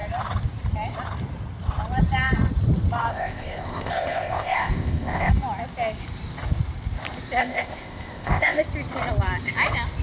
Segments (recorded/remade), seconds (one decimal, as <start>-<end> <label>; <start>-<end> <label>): 0.0-3.1 recorded; 3.1-5.3 remade; 5.3-7.4 recorded; 7.4-8.6 remade; 8.6-10.0 recorded